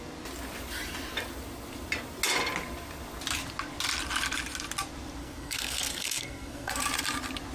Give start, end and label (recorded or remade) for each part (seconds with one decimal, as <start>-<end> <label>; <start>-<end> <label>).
0.0-5.2 recorded; 5.2-6.8 remade; 6.8-7.5 recorded